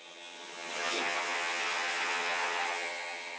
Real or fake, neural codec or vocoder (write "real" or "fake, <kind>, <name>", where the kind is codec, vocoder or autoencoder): fake, vocoder, HiFi-GAN